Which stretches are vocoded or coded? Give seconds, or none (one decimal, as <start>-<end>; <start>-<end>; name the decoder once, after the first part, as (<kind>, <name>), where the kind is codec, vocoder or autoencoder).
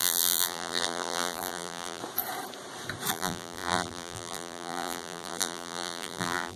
0.0-2.0 (vocoder, BigVGAN v2); 3.1-6.6